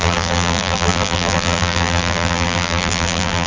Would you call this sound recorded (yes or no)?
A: no